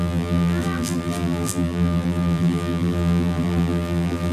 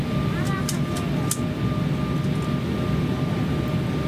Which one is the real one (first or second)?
second